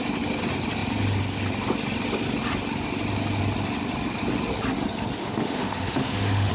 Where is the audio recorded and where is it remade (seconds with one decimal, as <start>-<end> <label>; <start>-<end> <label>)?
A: 0.0-5.2 recorded; 5.2-6.5 remade